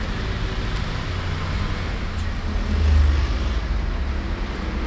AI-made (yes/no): no